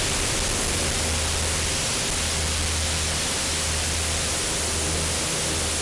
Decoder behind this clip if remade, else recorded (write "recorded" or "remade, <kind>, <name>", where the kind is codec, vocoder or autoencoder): recorded